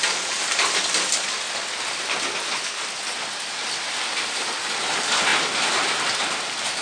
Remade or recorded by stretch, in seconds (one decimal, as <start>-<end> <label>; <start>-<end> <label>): 0.0-6.8 recorded